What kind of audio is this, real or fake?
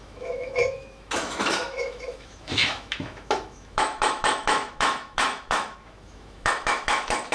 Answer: fake